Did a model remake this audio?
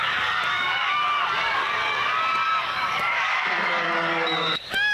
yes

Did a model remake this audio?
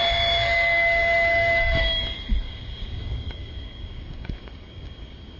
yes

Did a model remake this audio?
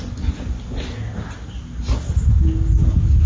no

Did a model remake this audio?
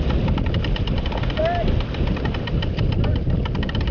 no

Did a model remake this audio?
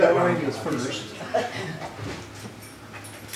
no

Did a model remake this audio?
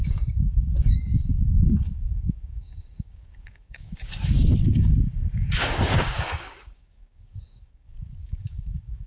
yes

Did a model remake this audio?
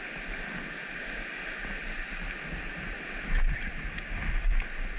no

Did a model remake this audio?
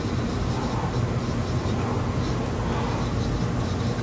no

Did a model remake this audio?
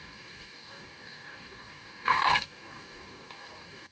yes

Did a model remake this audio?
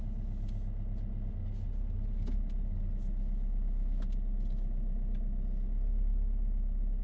no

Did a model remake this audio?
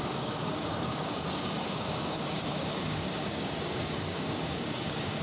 yes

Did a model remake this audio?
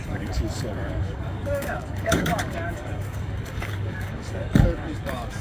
yes